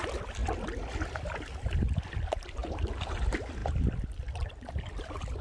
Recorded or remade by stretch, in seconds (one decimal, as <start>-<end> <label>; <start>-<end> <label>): 0.0-2.6 remade; 2.6-3.2 recorded; 3.2-5.4 remade